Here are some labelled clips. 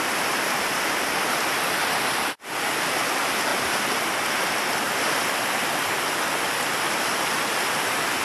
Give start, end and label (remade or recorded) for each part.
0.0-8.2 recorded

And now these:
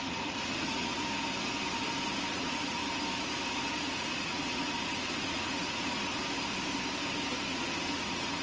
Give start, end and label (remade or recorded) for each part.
0.0-0.9 remade; 0.9-2.3 recorded; 2.3-2.8 remade; 2.8-3.8 recorded; 3.8-6.2 remade; 6.2-7.5 recorded; 7.5-8.4 remade

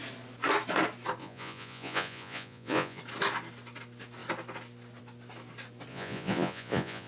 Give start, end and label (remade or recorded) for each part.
0.0-1.2 recorded; 1.2-3.0 remade; 3.0-5.9 recorded; 5.9-7.1 remade

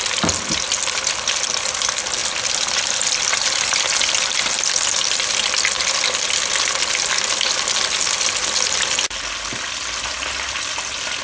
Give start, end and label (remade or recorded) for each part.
0.0-11.2 recorded